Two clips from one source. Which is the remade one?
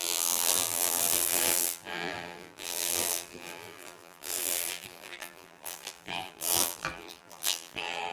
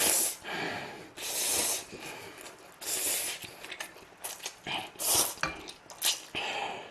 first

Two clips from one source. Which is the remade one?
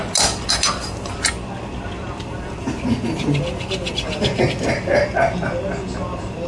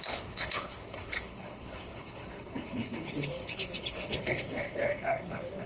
second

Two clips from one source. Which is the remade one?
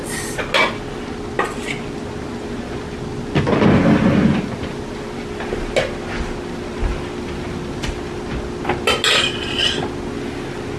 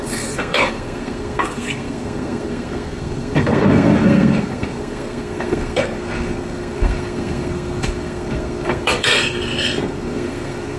second